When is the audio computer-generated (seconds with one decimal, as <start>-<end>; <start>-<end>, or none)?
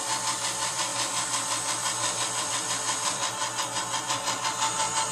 0.0-0.9; 2.4-3.4; 4.0-5.1